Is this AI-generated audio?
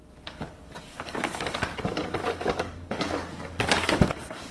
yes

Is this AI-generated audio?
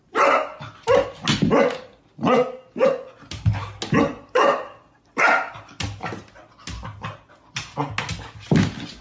no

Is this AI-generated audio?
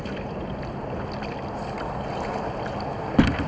no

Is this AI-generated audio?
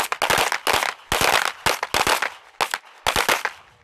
no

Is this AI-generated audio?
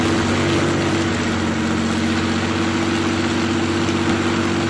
no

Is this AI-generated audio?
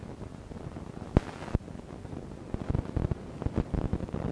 no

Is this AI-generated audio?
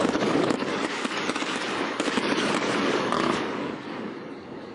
yes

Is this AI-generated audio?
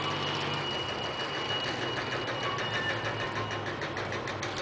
no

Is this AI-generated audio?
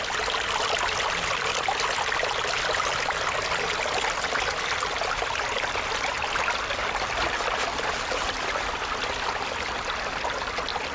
no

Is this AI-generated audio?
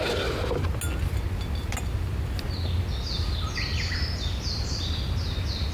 no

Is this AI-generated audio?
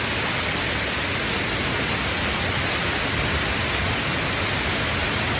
no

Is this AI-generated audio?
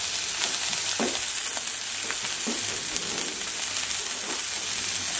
no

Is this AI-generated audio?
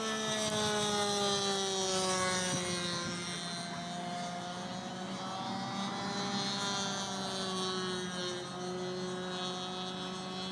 no